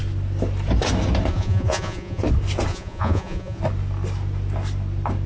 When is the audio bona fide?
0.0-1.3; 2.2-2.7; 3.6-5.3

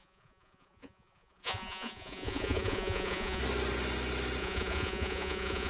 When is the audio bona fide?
3.4-4.4

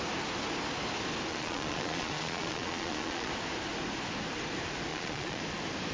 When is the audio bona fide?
0.0-1.3; 3.3-4.9; 5.4-5.9

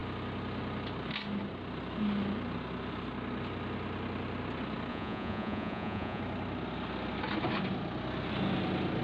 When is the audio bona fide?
0.0-4.9; 6.2-9.0

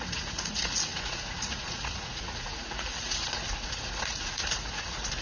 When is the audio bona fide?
none

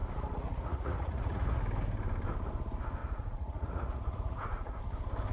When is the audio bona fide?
1.6-3.0; 4.8-5.3

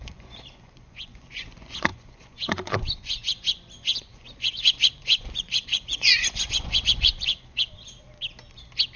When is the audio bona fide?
7.8-9.0

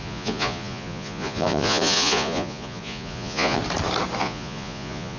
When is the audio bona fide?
3.6-4.2